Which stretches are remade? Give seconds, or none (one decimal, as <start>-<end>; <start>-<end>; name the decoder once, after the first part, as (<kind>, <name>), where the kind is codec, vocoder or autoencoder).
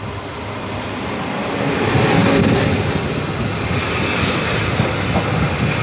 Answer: none